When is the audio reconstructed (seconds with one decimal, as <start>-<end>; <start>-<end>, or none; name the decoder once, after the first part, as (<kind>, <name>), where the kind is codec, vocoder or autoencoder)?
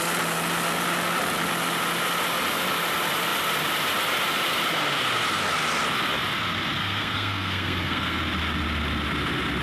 6.8-8.2 (codec, SNAC)